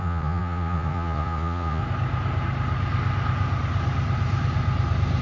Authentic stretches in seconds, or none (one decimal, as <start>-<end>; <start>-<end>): 1.8-5.2